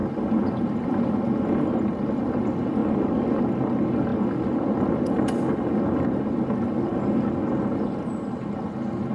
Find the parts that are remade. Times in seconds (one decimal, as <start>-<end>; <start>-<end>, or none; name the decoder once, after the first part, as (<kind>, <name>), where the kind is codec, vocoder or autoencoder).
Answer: 0.0-2.4 (vocoder, BigVGAN v2); 2.8-3.4